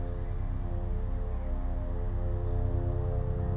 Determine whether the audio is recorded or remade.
recorded